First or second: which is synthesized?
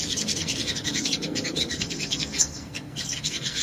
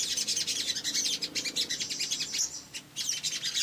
first